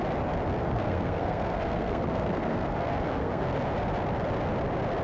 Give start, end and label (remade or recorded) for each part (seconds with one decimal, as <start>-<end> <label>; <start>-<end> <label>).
0.0-0.6 recorded; 0.6-3.6 remade; 3.6-5.0 recorded

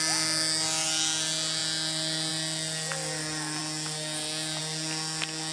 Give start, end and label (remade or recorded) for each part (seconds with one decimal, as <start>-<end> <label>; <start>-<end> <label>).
0.0-5.5 recorded

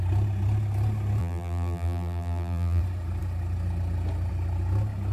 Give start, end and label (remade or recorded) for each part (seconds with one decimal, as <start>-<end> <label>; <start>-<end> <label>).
0.0-1.2 recorded; 1.2-2.8 remade; 2.8-5.1 recorded

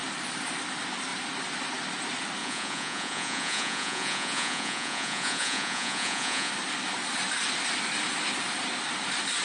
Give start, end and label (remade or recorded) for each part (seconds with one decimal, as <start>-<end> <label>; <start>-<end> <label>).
0.0-2.4 recorded; 2.4-6.5 remade; 6.5-9.4 recorded

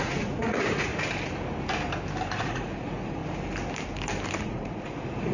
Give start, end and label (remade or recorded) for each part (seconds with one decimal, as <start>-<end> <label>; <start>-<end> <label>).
0.0-0.9 remade; 0.9-2.4 recorded; 2.4-3.2 remade; 3.2-4.4 recorded; 4.4-5.3 remade